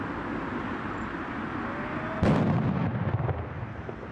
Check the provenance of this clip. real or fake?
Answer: real